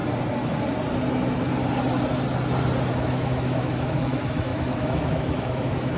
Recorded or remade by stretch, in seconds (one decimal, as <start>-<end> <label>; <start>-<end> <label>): 0.0-2.9 recorded; 2.9-6.0 remade

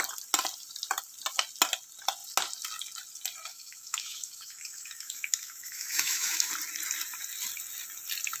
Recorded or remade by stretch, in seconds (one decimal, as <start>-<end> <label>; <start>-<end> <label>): 0.0-3.5 recorded; 3.5-6.5 remade; 6.5-8.4 recorded

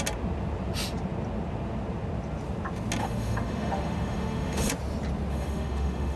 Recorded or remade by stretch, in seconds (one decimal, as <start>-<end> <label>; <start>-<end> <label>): 0.0-3.0 recorded; 3.0-4.7 remade; 4.7-5.3 recorded; 5.3-6.2 remade

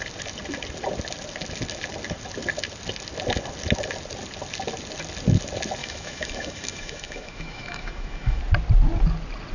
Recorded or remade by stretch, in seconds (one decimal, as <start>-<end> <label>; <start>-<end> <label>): 0.0-5.8 recorded; 5.8-8.4 remade; 8.4-9.5 recorded

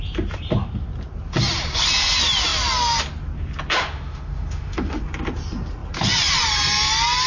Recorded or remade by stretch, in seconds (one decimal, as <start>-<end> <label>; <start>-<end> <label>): 0.0-3.7 recorded; 3.7-5.0 remade; 5.0-7.3 recorded